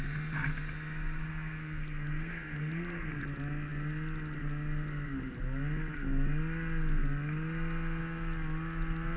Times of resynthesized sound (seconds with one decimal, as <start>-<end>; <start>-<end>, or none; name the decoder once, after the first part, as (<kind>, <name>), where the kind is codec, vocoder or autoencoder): 1.2-3.2 (codec, SNAC)